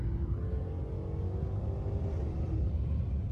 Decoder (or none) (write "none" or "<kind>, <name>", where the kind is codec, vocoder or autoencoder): none